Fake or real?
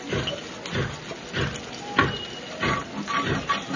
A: real